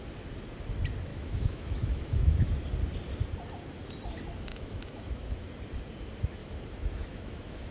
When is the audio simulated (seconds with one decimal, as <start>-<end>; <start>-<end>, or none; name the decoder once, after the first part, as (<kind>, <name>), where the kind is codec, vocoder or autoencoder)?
1.1-2.5 (autoencoder, DAC-VAE); 4.5-5.5; 6.4-7.7